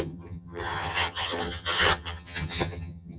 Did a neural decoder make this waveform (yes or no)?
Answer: yes